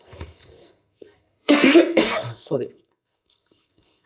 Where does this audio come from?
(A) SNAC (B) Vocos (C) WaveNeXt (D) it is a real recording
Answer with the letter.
A